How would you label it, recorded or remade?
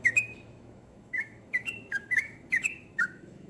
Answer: remade